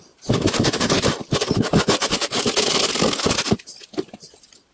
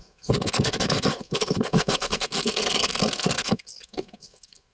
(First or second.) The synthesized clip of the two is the second